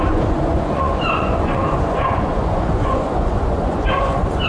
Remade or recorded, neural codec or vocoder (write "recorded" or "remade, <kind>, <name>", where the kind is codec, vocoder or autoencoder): remade, vocoder, Vocos